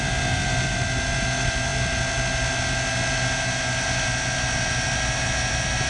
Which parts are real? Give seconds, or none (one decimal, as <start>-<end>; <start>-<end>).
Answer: 0.0-5.9